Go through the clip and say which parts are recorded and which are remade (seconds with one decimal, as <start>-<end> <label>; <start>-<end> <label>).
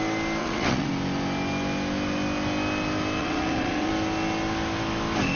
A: 0.0-0.4 recorded; 0.4-0.9 remade; 0.9-3.2 recorded; 3.2-3.9 remade; 3.9-5.4 recorded